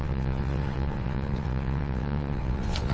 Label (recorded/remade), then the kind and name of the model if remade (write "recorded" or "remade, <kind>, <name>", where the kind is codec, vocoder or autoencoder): remade, vocoder, WaveNeXt